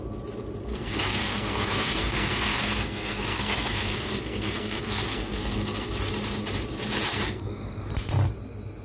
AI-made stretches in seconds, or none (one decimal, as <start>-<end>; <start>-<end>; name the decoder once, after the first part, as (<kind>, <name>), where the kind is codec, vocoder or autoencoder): 0.7-5.9 (codec, SNAC); 7.1-7.9